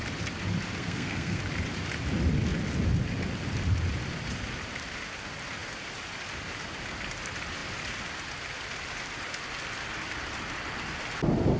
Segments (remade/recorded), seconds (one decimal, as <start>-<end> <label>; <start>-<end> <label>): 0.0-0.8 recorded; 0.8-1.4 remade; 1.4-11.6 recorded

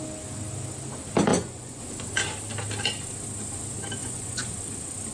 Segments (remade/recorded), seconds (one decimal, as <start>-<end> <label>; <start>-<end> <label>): 0.0-1.3 recorded; 1.3-1.8 remade; 1.8-4.0 recorded; 4.0-4.5 remade; 4.5-5.1 recorded

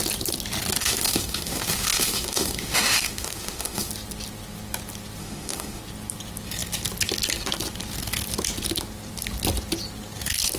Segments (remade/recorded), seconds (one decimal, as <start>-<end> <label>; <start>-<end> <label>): 0.0-0.8 recorded; 0.8-3.9 remade; 3.9-5.2 recorded; 5.2-5.8 remade; 5.8-10.6 recorded